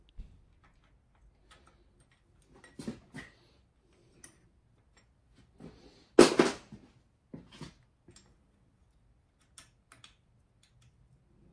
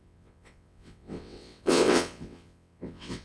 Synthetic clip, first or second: second